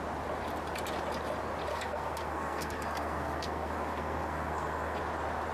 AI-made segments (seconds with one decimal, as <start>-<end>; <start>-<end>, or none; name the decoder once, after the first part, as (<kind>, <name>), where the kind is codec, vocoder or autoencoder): 1.7-5.0 (codec, SNAC)